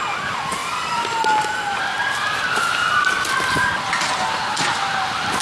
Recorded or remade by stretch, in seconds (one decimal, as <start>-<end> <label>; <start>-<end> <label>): 0.0-0.6 recorded; 0.6-3.8 remade; 3.8-5.4 recorded